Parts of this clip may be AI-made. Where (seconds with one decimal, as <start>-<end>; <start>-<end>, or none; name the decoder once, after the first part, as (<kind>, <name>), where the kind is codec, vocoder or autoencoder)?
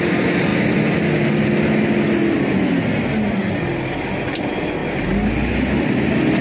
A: none